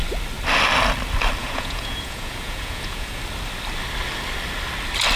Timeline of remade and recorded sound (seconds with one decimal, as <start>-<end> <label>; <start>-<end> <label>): 0.0-1.4 recorded; 1.4-3.2 remade; 3.2-5.2 recorded